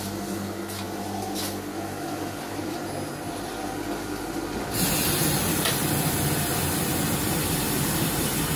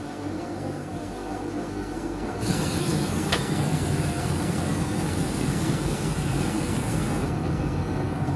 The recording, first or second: first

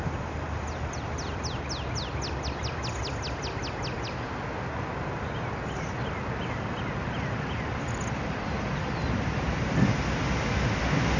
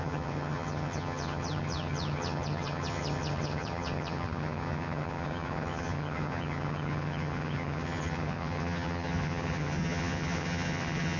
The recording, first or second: first